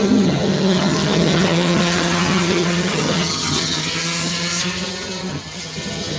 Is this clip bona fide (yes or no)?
no